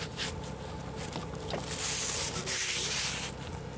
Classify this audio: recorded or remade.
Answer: recorded